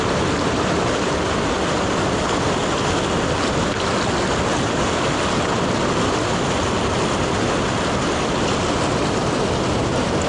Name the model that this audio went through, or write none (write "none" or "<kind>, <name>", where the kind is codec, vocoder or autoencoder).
none